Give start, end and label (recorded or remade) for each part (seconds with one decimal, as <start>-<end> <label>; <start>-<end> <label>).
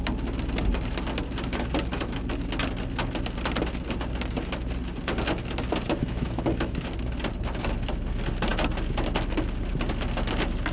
0.0-6.0 recorded; 6.0-6.8 remade; 6.8-10.7 recorded